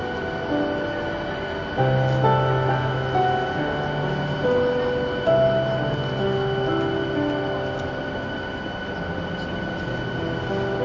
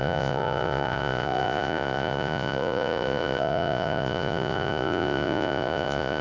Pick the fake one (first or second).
second